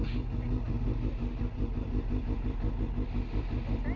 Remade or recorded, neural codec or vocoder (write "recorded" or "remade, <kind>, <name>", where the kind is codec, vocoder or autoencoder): recorded